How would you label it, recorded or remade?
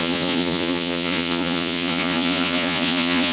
remade